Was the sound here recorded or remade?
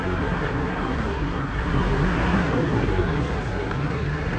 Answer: remade